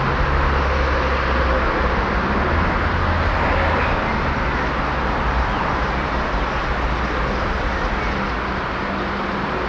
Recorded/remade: recorded